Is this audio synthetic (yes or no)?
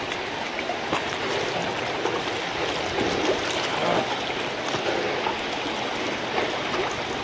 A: no